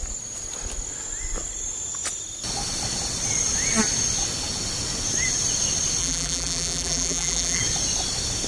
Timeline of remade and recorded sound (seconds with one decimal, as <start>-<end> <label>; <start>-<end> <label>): 0.0-6.0 recorded; 6.0-7.6 remade; 7.6-8.5 recorded